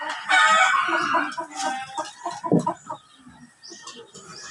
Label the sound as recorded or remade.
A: recorded